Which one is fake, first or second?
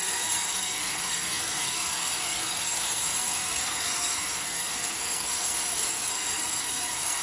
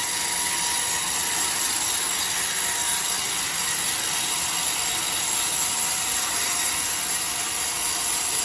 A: first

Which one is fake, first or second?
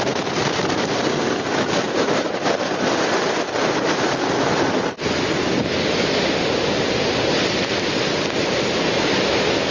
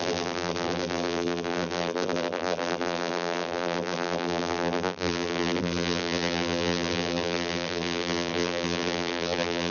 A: second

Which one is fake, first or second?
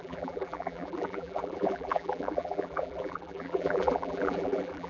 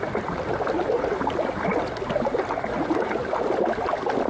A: first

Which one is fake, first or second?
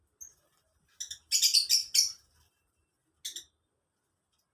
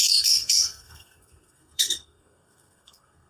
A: second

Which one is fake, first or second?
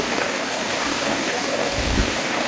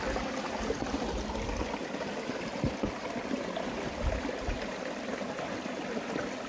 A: first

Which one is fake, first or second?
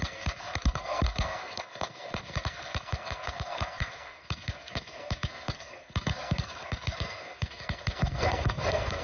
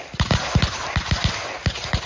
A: first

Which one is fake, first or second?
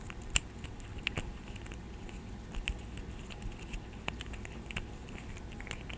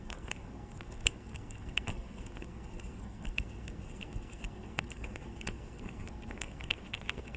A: second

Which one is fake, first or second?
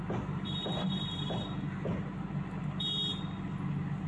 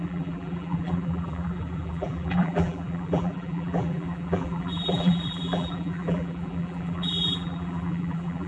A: second